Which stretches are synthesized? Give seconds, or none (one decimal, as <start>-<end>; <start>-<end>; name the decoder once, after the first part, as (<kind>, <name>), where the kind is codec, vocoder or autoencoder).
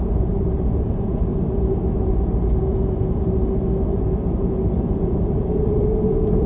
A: 0.0-1.3 (vocoder, BigVGAN v2); 4.8-6.5